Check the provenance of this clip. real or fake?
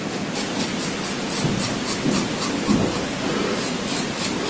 real